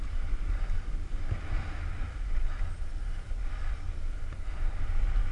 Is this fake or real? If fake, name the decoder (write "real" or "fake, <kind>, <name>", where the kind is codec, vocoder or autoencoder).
real